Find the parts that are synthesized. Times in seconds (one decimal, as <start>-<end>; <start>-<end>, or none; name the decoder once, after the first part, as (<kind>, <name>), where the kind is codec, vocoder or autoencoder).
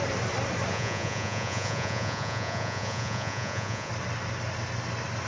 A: 0.7-3.9 (vocoder, Vocos)